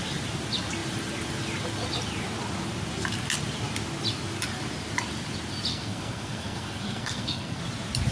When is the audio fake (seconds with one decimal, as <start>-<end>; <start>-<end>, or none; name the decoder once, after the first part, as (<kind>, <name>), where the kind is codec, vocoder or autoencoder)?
5.7-7.6 (codec, SNAC)